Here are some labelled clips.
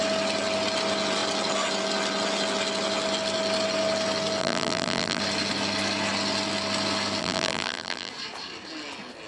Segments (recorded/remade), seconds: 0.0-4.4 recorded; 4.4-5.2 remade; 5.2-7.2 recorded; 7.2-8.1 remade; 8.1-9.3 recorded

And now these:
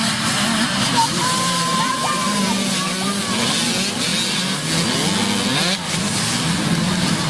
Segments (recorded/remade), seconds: 0.0-1.2 recorded; 1.2-2.4 remade; 2.4-7.3 recorded

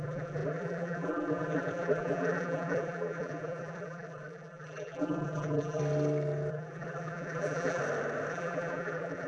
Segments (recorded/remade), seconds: 0.0-5.8 remade; 5.8-6.5 recorded; 6.5-7.8 remade; 7.8-8.3 recorded; 8.3-9.3 remade